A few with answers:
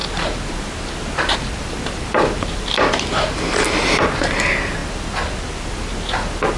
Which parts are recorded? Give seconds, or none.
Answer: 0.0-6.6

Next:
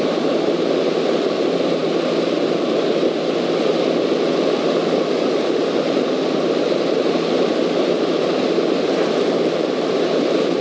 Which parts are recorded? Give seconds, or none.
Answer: 1.8-5.3

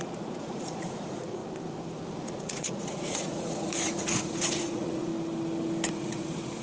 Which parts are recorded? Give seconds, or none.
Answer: 1.4-2.2; 5.1-5.9

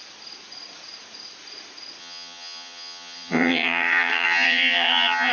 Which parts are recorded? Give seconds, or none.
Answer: 0.0-2.0

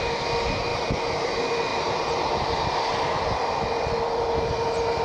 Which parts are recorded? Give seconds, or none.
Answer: 0.0-5.0